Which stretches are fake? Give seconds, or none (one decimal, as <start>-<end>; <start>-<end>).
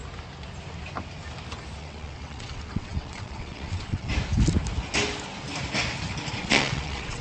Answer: 1.8-4.1; 6.4-7.2